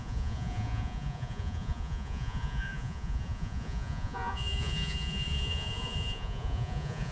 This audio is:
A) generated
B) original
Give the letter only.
A